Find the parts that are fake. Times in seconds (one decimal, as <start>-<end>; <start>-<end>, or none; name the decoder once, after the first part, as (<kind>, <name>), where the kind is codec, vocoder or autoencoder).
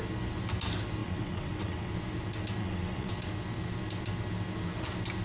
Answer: 1.0-1.9 (vocoder, WaveNeXt); 2.6-3.1